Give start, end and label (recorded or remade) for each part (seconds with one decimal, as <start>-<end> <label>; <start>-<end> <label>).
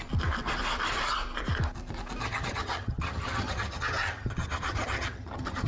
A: 0.0-2.2 recorded; 2.2-5.7 remade